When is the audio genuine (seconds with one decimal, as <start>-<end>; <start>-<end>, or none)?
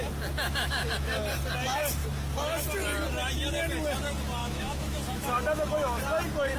0.0-0.4; 1.2-4.4; 6.0-6.6